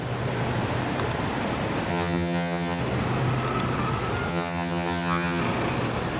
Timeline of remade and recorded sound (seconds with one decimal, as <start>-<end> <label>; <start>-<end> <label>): 0.0-1.9 recorded; 1.9-2.8 remade; 2.8-4.3 recorded; 4.3-5.4 remade; 5.4-6.2 recorded